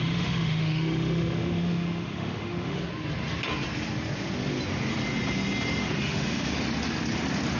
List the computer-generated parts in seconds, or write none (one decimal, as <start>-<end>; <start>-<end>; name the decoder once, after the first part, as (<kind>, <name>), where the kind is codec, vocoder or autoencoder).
0.0-2.8 (autoencoder, DAC-VAE); 6.0-6.5